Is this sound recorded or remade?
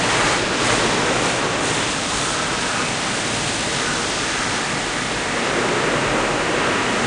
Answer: recorded